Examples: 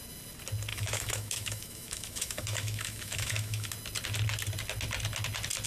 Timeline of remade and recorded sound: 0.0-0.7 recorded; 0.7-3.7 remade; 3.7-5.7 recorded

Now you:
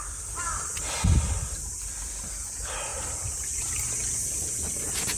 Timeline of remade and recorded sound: 0.0-2.9 recorded; 2.9-4.6 remade; 4.6-5.2 recorded

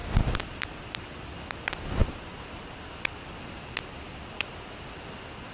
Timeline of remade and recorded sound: 0.0-5.5 recorded

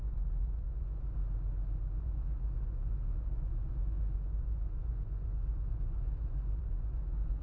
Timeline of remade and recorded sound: 0.0-1.2 remade; 1.2-2.0 recorded; 2.0-7.4 remade

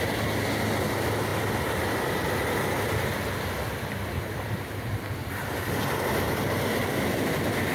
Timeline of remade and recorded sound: 0.0-7.7 recorded

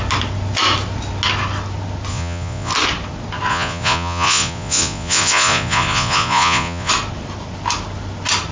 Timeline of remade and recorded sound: 0.0-2.1 recorded; 2.1-2.7 remade; 2.7-3.5 recorded; 3.5-6.9 remade; 6.9-8.5 recorded

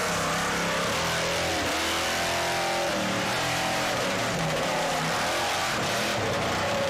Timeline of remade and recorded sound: 0.0-2.9 recorded; 2.9-5.0 remade; 5.0-5.6 recorded; 5.6-6.9 remade